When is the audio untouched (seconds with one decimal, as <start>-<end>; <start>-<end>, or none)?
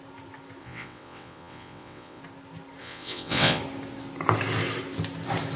0.0-0.6; 2.2-2.8; 3.6-5.6